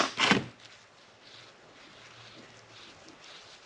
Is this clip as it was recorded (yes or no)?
yes